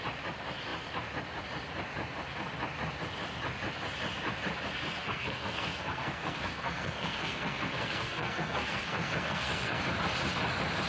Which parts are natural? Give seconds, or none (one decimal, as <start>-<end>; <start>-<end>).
0.0-5.0; 9.8-10.9